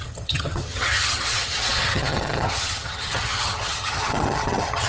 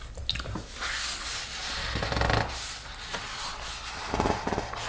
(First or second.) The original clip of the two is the second